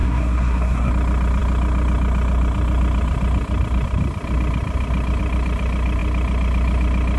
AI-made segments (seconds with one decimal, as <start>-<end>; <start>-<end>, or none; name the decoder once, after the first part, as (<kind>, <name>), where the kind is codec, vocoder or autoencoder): 0.0-0.9 (codec, SNAC)